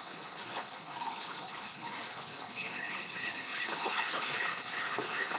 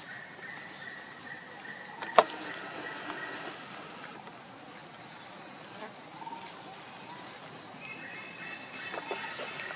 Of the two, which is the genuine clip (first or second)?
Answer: second